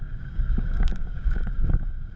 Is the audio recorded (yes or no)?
no